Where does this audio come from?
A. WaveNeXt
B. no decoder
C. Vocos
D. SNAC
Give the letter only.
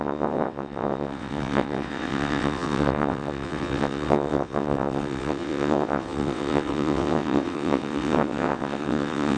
A